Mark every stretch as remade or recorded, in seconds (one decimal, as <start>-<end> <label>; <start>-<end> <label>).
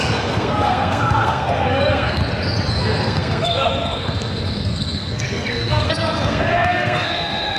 0.0-2.2 remade; 2.2-2.7 recorded; 2.7-7.6 remade